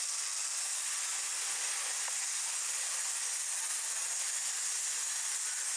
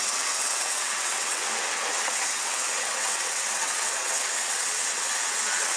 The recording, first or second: first